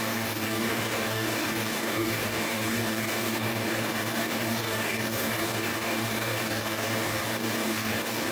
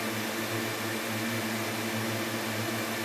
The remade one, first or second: first